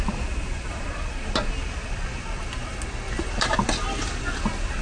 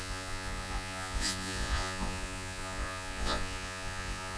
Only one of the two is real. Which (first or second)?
first